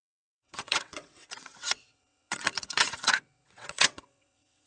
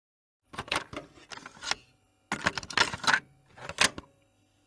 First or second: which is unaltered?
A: second